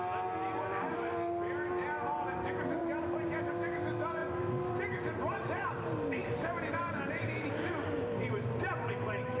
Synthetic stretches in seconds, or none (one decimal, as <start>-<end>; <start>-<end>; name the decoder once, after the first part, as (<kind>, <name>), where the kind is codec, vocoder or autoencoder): 2.8-3.3 (vocoder, BigVGAN v2); 4.2-9.4